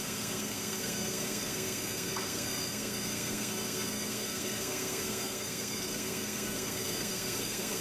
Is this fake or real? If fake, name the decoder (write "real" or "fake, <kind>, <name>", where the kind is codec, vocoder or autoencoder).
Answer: fake, codec, SNAC